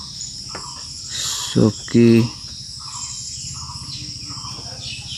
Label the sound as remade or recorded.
recorded